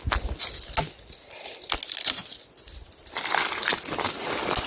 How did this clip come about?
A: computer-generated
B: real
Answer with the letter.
B